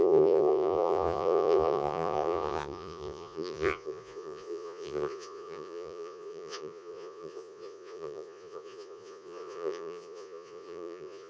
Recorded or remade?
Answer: remade